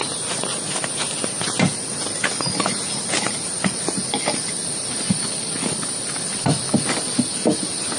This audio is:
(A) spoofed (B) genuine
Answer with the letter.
B